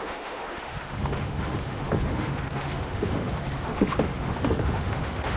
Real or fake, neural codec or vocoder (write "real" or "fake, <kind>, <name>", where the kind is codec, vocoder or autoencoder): fake, autoencoder, DAC-VAE